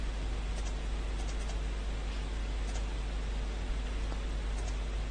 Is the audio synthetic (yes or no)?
no